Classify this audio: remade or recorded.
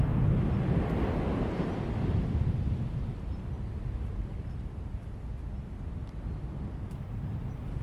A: recorded